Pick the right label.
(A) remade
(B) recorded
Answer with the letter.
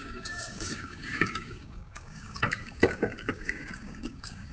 A